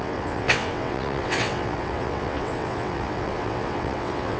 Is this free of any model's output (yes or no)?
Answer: no